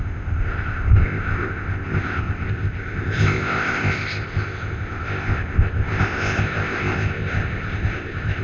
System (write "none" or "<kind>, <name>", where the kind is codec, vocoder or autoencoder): codec, ZipCodec